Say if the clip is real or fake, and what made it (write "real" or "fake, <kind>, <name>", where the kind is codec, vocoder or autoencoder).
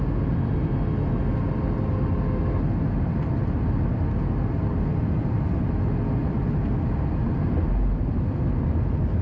real